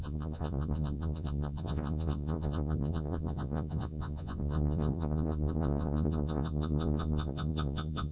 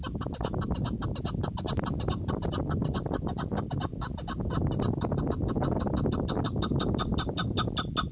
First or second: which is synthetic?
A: first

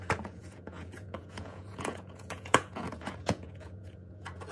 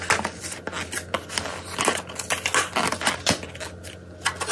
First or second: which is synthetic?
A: first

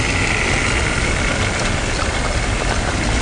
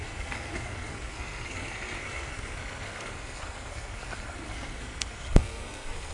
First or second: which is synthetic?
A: second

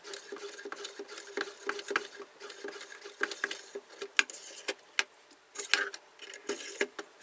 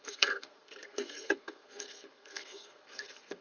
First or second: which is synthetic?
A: second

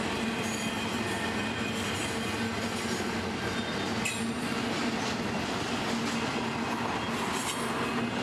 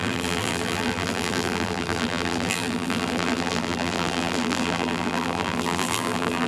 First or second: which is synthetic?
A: second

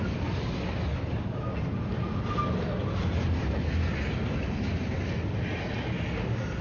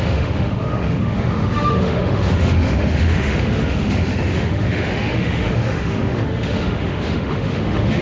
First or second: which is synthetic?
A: second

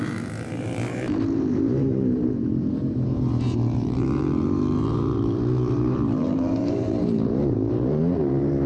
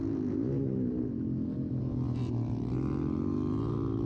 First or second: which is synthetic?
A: first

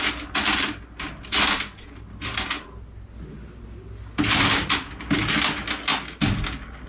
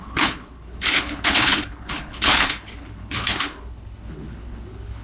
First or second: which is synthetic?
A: second